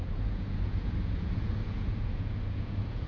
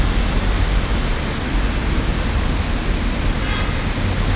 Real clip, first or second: second